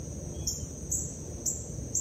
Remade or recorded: recorded